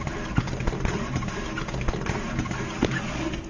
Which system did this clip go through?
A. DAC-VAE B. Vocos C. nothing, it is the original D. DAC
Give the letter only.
C